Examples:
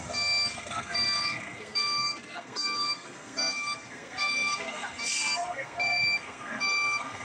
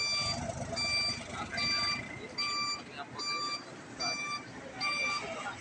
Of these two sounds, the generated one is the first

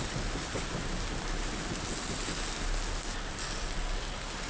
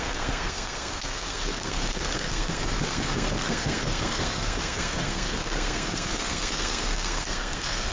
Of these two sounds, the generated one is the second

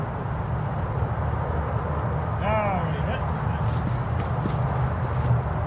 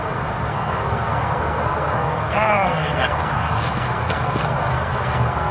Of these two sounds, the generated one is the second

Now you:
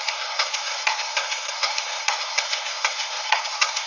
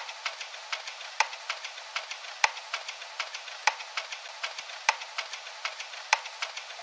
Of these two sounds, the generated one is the first